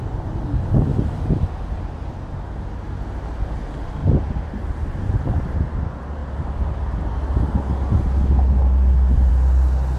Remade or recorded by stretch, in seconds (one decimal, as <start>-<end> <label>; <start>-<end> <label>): 0.0-0.9 recorded; 0.9-2.1 remade; 2.1-4.0 recorded; 4.0-5.5 remade; 5.5-10.0 recorded